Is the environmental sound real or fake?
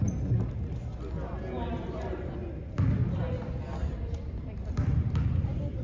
real